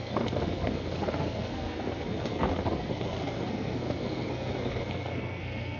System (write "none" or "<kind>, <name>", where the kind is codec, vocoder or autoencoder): codec, SNAC